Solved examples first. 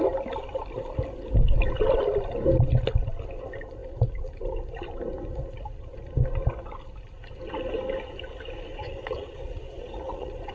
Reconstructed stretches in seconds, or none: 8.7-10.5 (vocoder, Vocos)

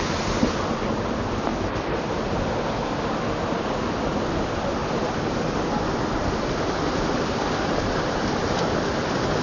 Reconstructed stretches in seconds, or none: 1.5-2.3 (vocoder, BigVGAN v2); 4.8-5.6